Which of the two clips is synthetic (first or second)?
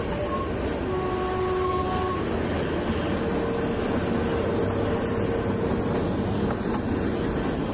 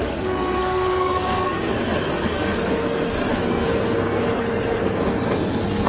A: second